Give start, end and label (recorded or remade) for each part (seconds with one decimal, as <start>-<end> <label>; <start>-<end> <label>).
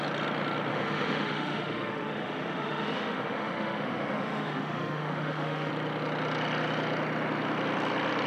0.0-0.7 recorded; 0.7-5.7 remade; 5.7-8.3 recorded